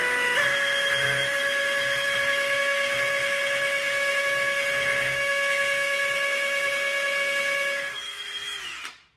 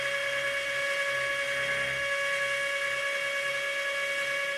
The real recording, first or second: second